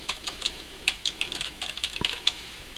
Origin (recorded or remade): remade